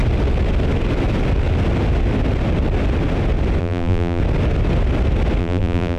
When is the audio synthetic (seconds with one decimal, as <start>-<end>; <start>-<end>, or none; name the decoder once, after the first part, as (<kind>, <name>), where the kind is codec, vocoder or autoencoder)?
3.6-4.2 (vocoder, BigVGAN v2); 5.4-6.0